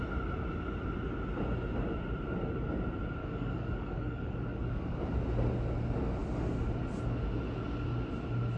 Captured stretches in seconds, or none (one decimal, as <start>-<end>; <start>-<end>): 0.0-3.2; 5.1-8.6